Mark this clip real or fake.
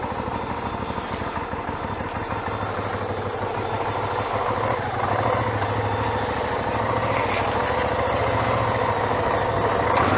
real